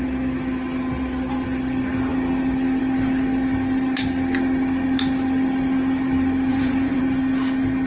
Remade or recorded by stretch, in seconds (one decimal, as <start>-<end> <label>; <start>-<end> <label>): 0.0-6.5 recorded; 6.5-7.0 remade; 7.0-7.9 recorded